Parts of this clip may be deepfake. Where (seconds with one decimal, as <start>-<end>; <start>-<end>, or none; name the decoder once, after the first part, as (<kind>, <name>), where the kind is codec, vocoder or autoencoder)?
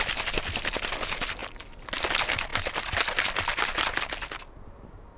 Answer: 1.4-2.1 (vocoder, BigVGAN v2)